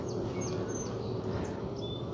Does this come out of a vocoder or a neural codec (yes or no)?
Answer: no